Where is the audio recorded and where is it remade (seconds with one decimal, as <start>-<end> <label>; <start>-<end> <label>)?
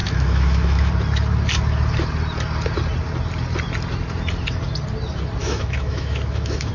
0.0-0.9 remade; 0.9-5.4 recorded; 5.4-6.7 remade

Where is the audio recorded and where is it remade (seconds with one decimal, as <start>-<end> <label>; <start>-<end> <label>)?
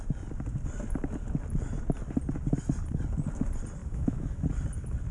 0.0-3.8 recorded; 3.8-4.4 remade; 4.4-5.1 recorded